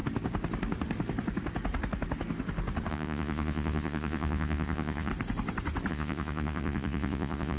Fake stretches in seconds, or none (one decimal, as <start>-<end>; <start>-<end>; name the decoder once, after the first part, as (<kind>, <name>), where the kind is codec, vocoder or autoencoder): 2.9-5.1 (vocoder, Vocos); 5.9-7.6